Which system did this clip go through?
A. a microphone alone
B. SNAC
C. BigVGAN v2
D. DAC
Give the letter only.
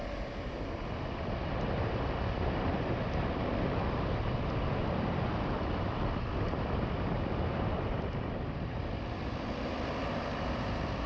A